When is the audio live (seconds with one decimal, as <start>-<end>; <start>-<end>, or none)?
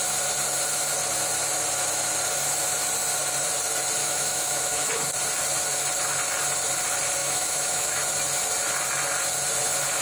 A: 0.0-4.0; 4.9-7.2; 8.0-10.0